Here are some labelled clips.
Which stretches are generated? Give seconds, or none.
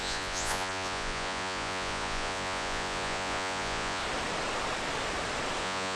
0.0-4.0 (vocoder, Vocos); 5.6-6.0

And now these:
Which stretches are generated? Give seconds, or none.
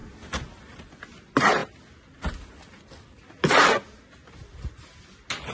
none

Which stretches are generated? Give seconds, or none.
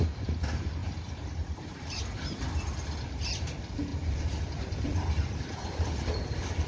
0.8-2.0 (vocoder, BigVGAN v2); 3.9-5.9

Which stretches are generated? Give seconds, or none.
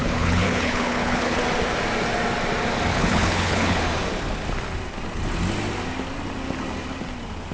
0.0-1.4 (codec, HILCodec); 2.9-3.8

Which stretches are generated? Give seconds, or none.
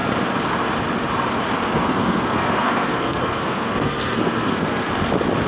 1.6-4.9 (codec, SNAC)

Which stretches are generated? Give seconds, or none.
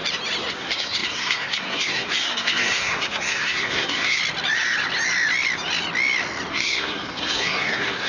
0.5-4.2 (codec, SNAC); 6.5-8.1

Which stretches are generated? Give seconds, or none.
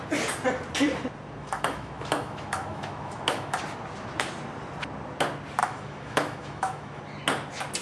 1.4-3.6 (autoencoder, DAC-VAE); 5.6-7.0